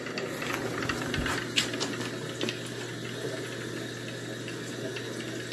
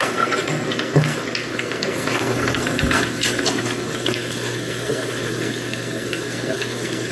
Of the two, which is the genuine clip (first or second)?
first